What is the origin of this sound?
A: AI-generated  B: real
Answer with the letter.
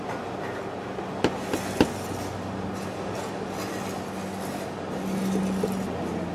B